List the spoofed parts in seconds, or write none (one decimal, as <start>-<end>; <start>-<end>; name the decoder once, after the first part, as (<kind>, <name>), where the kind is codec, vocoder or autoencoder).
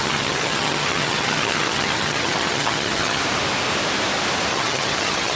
0.0-3.2 (vocoder, HiFi-GAN); 4.5-5.4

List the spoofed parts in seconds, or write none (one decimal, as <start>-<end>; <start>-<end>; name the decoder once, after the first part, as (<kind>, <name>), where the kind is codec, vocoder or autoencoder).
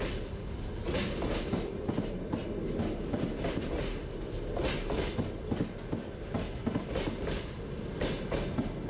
none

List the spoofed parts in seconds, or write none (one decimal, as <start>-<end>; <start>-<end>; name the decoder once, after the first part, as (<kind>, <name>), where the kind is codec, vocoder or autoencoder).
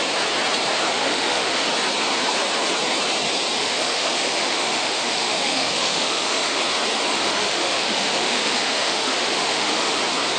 0.9-1.7 (autoencoder, DAC-VAE); 3.6-6.6; 7.1-10.0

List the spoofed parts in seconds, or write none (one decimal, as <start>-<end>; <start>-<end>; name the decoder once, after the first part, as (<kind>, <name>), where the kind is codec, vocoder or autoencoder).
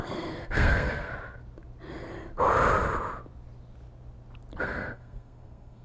0.0-1.1 (codec, SNAC); 4.6-5.8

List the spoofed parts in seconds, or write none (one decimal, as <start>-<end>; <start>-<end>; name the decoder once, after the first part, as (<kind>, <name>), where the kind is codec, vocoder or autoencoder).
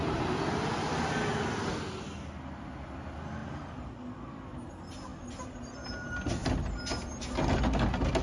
3.4-4.0 (vocoder, BigVGAN v2)